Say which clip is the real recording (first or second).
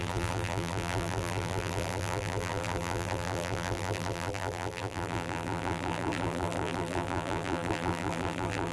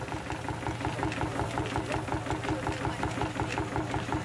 second